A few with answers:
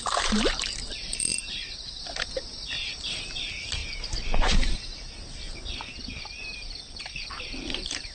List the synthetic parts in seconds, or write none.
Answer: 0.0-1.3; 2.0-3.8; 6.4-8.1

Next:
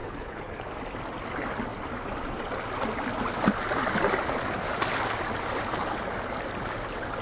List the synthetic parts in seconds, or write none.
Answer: 0.0-0.7

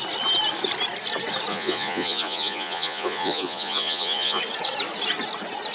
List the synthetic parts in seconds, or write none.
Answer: 1.5-4.4